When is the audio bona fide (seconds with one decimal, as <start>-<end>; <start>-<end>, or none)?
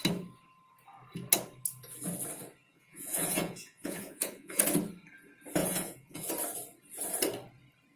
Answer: 0.0-2.7; 4.6-5.6; 6.3-8.0